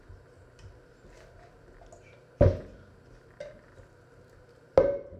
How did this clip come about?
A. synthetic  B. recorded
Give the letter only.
B